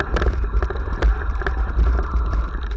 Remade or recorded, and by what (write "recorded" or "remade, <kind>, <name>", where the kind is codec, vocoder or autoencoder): remade, vocoder, BigVGAN v2